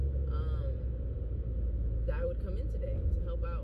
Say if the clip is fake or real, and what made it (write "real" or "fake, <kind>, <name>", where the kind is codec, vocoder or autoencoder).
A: real